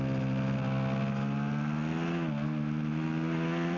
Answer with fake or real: real